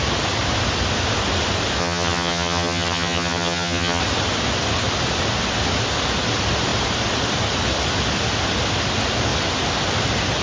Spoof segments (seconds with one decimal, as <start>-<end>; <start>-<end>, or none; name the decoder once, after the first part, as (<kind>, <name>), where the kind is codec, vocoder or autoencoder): 1.8-4.0 (vocoder, HiFi-GAN)